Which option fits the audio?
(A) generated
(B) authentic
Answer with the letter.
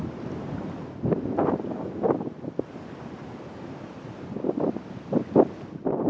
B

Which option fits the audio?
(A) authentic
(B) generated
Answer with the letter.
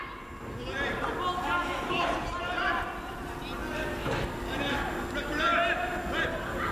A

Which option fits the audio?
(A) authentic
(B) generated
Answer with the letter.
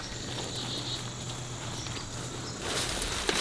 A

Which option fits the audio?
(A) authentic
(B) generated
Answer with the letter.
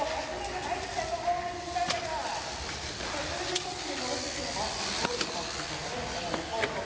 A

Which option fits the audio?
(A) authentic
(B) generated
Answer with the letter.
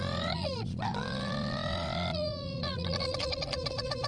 B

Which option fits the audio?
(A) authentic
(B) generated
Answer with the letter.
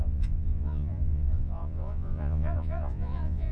B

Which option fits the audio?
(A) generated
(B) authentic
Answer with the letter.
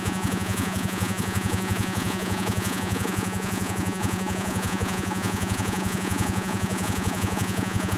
A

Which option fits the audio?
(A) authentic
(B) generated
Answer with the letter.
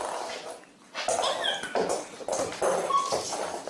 A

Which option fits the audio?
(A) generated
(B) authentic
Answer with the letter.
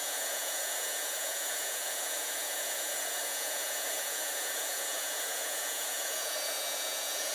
A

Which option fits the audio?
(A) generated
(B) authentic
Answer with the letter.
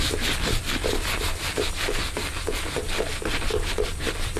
B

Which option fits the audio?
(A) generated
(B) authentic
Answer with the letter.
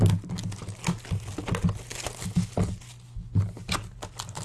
B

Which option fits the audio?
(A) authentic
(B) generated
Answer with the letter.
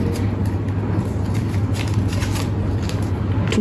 A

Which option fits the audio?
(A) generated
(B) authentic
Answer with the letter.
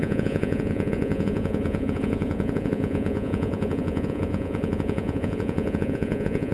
A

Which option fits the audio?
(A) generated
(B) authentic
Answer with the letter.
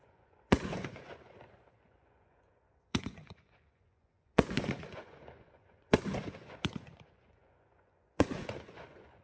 A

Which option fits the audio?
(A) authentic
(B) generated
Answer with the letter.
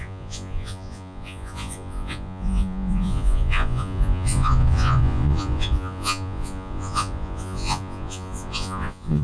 B